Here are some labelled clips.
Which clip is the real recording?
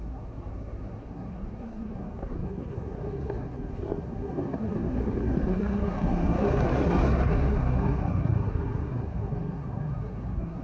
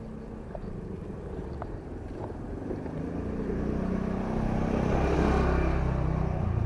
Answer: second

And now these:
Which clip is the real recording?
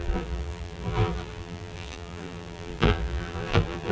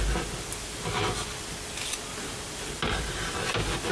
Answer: second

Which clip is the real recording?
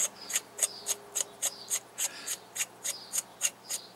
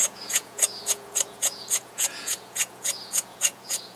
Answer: first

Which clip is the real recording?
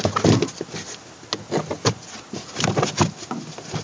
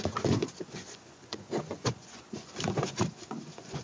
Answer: first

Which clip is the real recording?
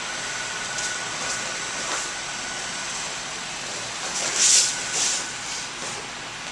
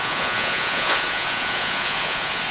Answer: first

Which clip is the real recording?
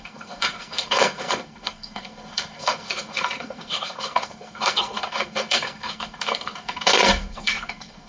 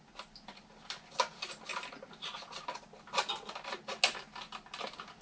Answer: second